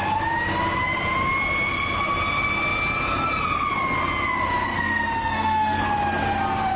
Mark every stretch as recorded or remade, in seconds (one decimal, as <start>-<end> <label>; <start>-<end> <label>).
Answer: 0.0-4.7 recorded; 4.7-5.8 remade; 5.8-6.8 recorded